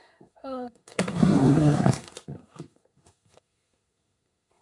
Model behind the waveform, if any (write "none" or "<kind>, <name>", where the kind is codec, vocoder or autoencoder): codec, SNAC